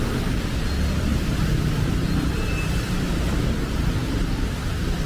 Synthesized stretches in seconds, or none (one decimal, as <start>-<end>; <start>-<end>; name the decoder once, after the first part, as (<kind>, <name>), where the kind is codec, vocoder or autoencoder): 0.0-4.0 (vocoder, BigVGAN v2)